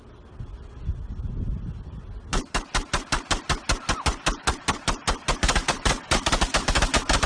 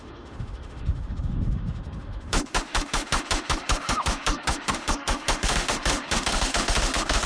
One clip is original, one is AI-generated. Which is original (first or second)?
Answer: first